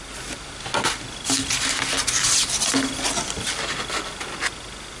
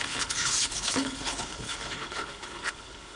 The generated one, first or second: second